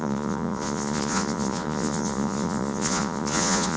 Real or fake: fake